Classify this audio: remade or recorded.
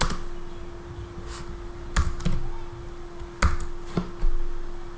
recorded